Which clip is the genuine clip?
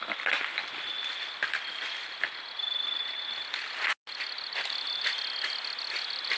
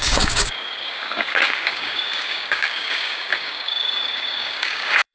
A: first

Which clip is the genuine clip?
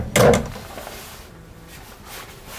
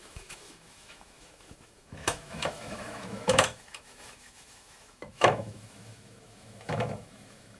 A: first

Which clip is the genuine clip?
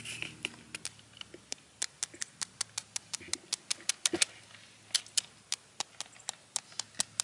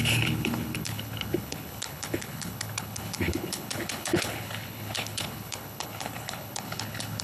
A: first